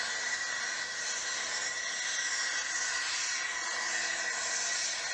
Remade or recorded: recorded